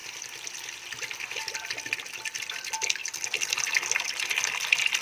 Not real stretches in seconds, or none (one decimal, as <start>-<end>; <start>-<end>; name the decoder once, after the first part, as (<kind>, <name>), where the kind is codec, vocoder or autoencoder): none